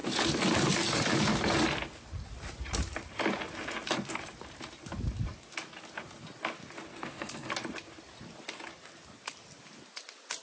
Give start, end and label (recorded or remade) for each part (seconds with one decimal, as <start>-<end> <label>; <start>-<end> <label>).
0.0-6.9 recorded; 6.9-7.5 remade; 7.5-10.4 recorded